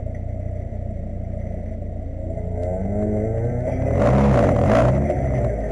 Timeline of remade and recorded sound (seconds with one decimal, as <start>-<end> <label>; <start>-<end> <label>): 0.0-5.7 recorded